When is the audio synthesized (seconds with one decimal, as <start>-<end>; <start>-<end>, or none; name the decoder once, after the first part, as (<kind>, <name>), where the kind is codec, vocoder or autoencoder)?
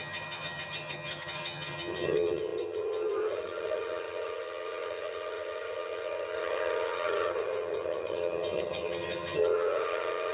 0.0-10.3 (vocoder, HiFi-GAN)